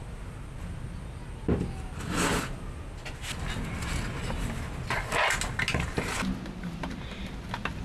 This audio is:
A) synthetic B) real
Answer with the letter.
B